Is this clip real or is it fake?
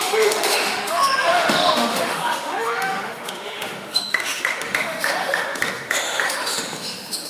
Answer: fake